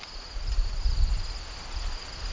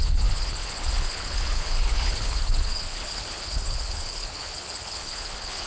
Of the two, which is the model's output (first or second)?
second